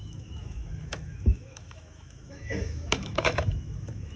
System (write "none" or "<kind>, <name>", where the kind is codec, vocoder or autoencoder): autoencoder, DAC-VAE